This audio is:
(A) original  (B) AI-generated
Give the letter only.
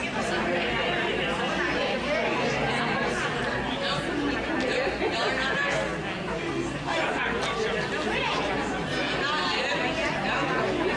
A